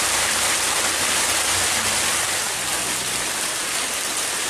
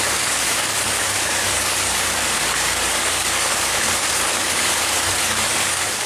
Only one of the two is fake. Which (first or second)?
second